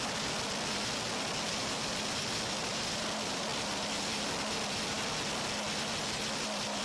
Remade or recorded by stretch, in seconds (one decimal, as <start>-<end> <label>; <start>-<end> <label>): 0.0-6.8 recorded